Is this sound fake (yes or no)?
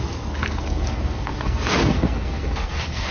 yes